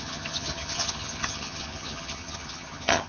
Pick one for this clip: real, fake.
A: fake